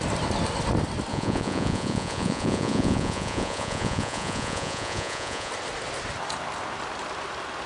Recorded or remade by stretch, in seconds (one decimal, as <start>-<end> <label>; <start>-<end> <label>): 0.0-1.1 recorded; 1.1-5.5 remade; 5.5-7.7 recorded